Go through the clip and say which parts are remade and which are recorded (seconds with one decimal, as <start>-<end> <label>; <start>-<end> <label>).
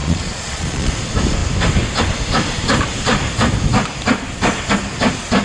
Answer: 0.0-0.9 remade; 0.9-5.4 recorded